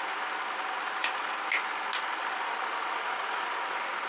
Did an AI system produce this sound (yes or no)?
no